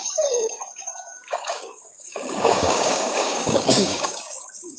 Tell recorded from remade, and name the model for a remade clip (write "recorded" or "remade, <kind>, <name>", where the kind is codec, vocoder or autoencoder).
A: remade, codec, DAC